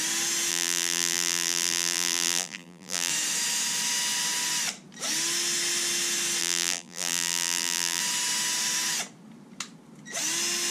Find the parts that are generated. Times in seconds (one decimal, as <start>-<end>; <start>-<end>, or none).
0.5-3.1; 6.4-8.0